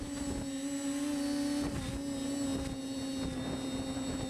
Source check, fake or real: real